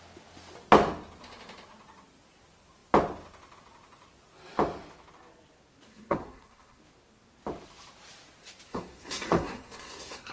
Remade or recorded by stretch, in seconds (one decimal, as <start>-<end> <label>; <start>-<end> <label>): 0.0-5.9 recorded; 5.9-6.8 remade; 6.8-8.7 recorded; 8.7-10.3 remade